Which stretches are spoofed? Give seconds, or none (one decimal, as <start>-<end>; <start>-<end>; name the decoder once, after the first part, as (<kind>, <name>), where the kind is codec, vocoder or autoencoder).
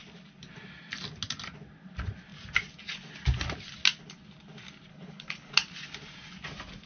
4.9-5.5 (codec, HILCodec)